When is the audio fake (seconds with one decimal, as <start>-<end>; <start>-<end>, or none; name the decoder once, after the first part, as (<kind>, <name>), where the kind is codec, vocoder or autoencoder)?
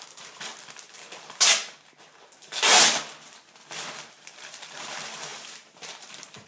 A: 0.0-0.5 (vocoder, BigVGAN v2); 4.4-6.5